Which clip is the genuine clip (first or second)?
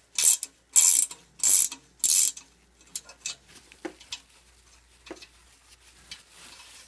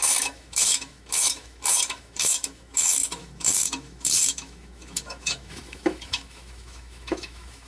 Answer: first